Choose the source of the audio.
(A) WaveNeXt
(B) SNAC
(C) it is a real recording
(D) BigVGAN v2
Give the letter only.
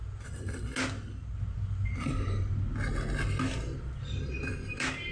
C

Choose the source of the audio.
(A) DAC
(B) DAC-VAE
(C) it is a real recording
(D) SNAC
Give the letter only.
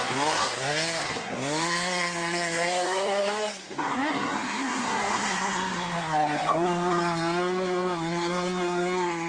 D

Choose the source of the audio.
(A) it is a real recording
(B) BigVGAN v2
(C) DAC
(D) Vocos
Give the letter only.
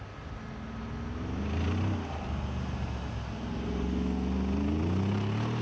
A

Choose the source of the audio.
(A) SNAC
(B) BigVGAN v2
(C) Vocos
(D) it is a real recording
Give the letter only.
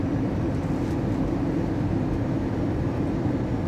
D